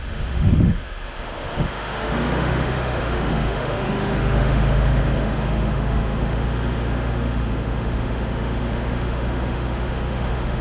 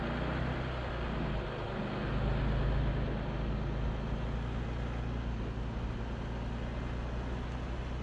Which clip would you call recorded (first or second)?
second